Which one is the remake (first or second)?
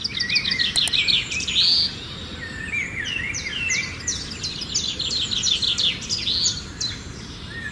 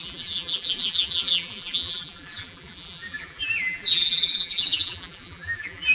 second